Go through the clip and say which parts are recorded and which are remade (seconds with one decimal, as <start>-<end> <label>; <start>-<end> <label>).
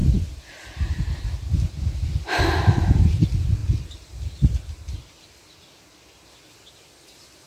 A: 0.0-7.5 recorded